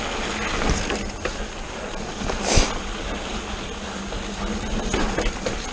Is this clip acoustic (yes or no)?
yes